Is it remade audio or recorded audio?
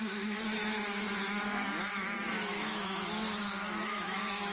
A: remade